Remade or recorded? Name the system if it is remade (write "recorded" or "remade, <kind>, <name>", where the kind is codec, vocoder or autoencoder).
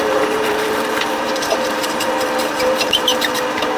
remade, vocoder, BigVGAN v2